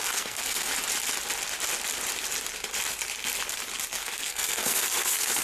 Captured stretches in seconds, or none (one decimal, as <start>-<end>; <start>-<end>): 0.7-3.9